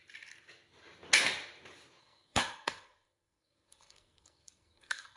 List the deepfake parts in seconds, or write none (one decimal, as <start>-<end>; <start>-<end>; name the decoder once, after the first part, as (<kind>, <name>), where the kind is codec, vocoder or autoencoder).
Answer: 2.0-5.2 (codec, SNAC)